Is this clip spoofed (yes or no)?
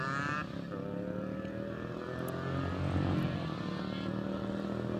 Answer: no